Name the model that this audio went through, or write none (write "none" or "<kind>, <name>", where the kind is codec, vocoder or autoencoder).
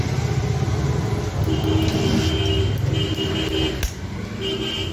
none